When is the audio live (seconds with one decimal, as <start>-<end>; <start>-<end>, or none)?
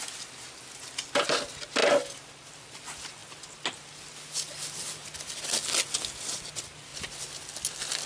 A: 0.0-8.1